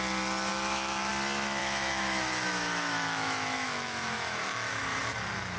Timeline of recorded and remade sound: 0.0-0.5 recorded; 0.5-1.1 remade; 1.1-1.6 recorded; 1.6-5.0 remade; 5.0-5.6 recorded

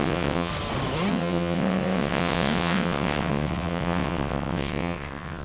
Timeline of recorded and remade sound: 0.0-0.5 remade; 0.5-1.1 recorded; 1.1-5.4 remade

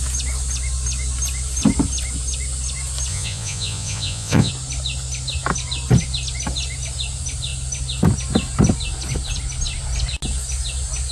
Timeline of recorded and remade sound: 0.0-3.1 recorded; 3.1-4.5 remade; 4.5-11.1 recorded

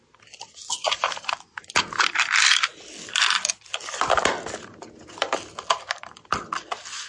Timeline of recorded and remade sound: 0.0-0.8 recorded; 0.8-1.3 remade; 1.3-7.1 recorded

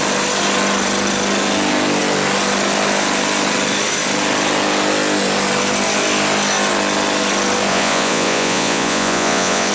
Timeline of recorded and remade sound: 0.0-7.7 recorded; 7.7-9.7 remade

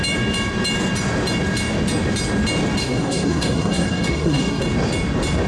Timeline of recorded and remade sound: 0.0-2.8 recorded; 2.8-4.6 remade; 4.6-5.5 recorded

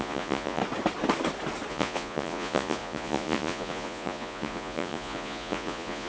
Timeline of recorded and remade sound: 0.0-0.6 remade; 0.6-1.7 recorded; 1.7-6.1 remade